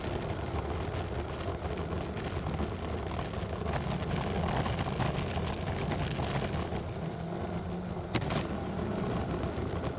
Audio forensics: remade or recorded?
recorded